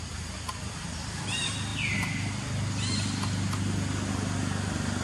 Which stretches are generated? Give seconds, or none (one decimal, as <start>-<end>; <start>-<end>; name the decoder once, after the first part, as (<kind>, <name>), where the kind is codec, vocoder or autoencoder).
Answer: none